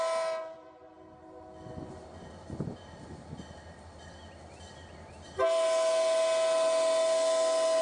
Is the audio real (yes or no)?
yes